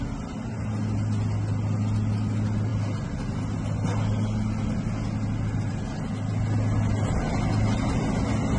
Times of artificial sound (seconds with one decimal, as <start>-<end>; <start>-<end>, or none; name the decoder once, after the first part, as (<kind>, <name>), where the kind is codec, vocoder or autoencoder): none